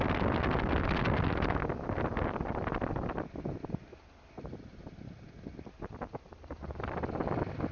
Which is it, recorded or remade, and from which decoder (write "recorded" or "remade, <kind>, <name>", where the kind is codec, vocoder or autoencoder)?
recorded